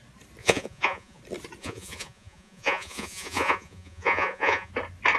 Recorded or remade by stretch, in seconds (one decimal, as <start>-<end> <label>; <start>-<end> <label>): 0.0-0.4 recorded; 0.4-1.2 remade; 1.2-1.6 recorded; 1.6-4.7 remade; 4.7-5.2 recorded